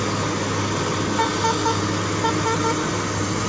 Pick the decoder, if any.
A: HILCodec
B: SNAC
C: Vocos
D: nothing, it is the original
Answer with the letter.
D